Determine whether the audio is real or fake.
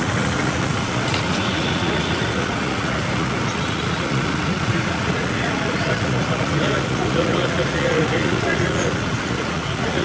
fake